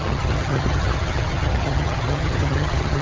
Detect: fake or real fake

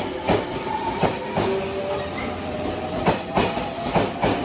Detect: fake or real real